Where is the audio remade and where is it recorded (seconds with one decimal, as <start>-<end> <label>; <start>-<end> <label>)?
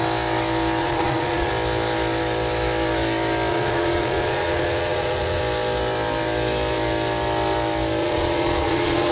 0.0-0.8 recorded; 0.8-1.5 remade; 1.5-3.5 recorded; 3.5-5.4 remade; 5.4-8.0 recorded; 8.0-9.1 remade